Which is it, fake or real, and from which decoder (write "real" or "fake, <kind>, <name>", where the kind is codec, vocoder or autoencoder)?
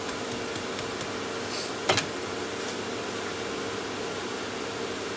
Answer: real